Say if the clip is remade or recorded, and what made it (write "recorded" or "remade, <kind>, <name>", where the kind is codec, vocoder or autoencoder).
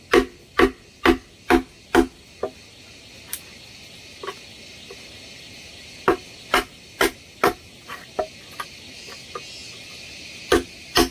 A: recorded